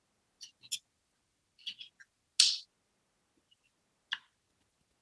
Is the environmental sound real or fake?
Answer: real